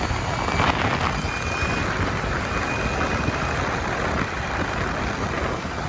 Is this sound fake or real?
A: real